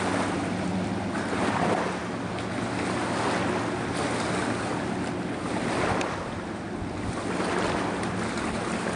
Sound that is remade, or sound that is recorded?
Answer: recorded